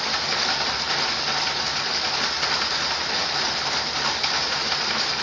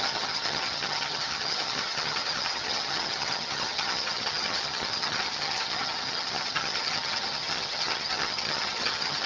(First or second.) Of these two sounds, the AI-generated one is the second